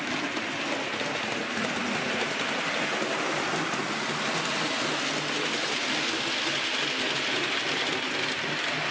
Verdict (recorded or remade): recorded